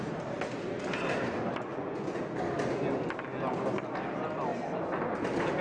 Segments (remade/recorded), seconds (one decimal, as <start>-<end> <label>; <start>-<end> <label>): 0.0-1.7 recorded; 1.7-2.2 remade; 2.2-5.6 recorded